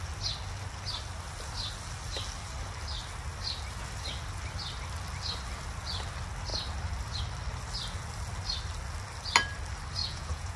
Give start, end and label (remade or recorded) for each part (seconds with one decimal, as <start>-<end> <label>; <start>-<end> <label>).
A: 0.0-10.0 recorded; 10.0-10.6 remade